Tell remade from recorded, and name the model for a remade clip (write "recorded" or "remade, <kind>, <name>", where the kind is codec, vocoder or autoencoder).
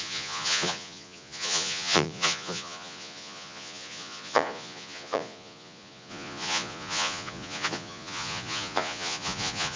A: remade, vocoder, Vocos